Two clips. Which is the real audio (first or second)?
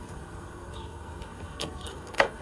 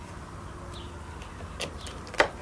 second